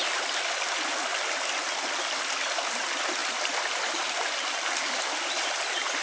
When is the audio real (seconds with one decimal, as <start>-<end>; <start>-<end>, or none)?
0.0-6.0